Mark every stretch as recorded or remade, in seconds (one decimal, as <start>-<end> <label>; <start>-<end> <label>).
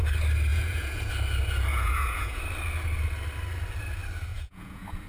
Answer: 0.0-0.5 recorded; 0.5-1.1 remade; 1.1-1.7 recorded; 1.7-2.4 remade; 2.4-4.3 recorded; 4.3-5.1 remade